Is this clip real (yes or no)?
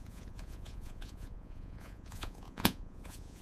no